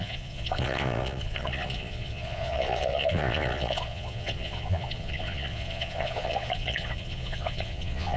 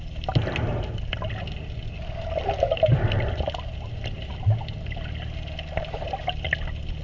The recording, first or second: second